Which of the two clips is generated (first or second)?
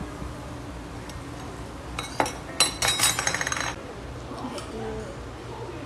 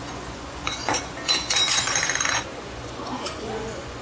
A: second